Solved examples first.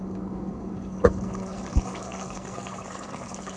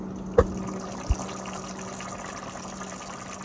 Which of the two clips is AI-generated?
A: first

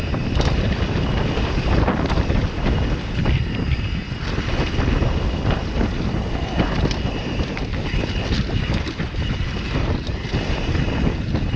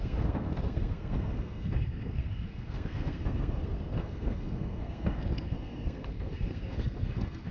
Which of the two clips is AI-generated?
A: second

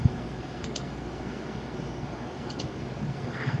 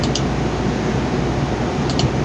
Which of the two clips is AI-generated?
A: first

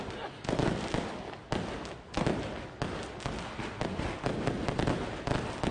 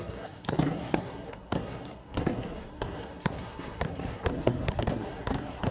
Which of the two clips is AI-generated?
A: second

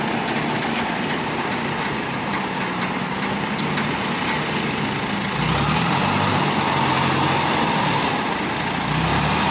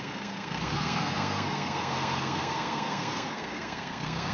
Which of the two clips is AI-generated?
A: second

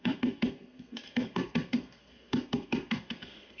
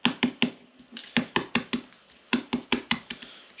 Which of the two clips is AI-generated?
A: first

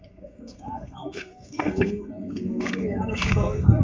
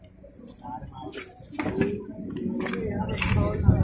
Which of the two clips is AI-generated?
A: first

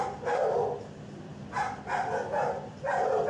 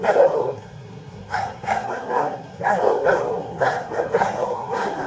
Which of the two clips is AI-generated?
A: second